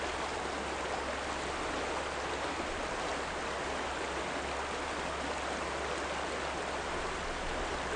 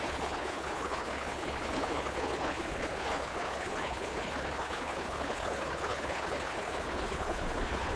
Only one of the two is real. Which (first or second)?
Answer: first